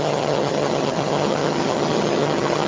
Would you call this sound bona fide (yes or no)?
no